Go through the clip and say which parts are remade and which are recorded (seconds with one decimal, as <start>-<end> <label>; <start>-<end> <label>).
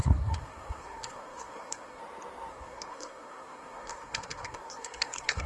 0.0-2.0 remade; 2.0-2.5 recorded; 2.5-5.5 remade